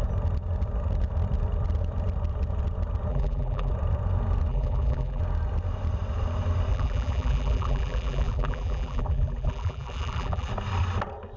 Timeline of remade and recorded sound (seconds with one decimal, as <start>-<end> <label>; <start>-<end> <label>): 0.0-3.1 recorded; 3.1-3.7 remade; 3.7-4.5 recorded; 4.5-5.2 remade; 5.2-6.7 recorded; 6.7-10.5 remade; 10.5-11.4 recorded